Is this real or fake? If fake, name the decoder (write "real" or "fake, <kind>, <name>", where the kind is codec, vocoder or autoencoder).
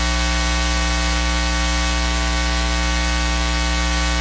real